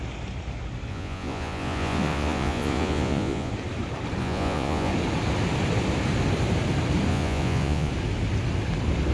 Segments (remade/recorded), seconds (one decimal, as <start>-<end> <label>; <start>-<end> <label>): 0.0-0.9 recorded; 0.9-3.5 remade; 3.5-4.2 recorded; 4.2-4.9 remade; 4.9-7.1 recorded; 7.1-7.9 remade; 7.9-9.1 recorded